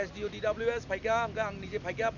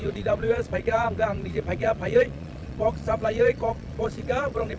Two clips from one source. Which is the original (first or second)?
first